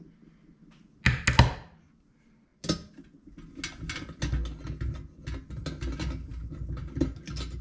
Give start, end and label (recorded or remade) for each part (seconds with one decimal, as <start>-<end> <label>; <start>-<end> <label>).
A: 0.0-7.6 recorded